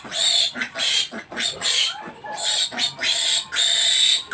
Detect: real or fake real